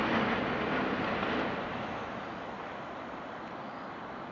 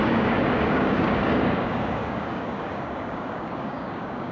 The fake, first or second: second